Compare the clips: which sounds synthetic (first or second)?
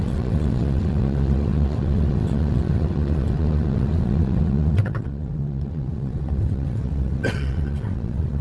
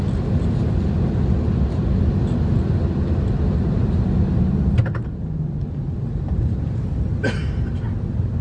first